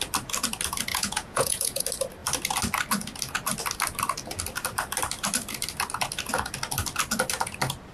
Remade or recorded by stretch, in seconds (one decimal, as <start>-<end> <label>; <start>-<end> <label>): 0.0-0.9 recorded; 0.9-1.8 remade; 1.8-7.9 recorded